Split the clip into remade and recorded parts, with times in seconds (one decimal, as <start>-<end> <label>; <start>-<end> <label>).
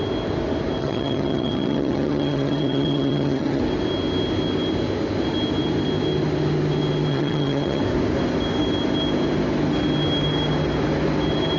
0.0-0.8 recorded; 0.8-3.6 remade; 3.6-7.1 recorded; 7.1-7.8 remade; 7.8-11.6 recorded